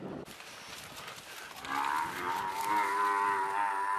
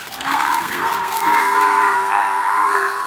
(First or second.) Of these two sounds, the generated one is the second